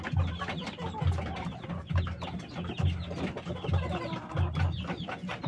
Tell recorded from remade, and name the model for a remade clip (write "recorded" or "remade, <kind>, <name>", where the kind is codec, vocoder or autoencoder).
recorded